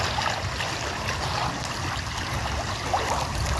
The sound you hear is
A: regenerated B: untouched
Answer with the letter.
B